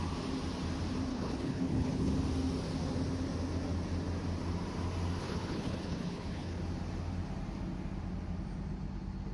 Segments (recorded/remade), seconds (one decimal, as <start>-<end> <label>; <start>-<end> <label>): 0.0-1.1 recorded; 1.1-2.1 remade; 2.1-5.2 recorded; 5.2-6.6 remade; 6.6-9.3 recorded